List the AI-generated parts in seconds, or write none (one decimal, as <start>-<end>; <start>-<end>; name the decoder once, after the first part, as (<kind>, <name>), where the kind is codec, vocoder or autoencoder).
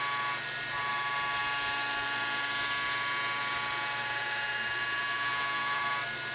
5.3-5.8 (vocoder, BigVGAN v2)